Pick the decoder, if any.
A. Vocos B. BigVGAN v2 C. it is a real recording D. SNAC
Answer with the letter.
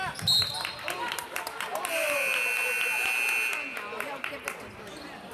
C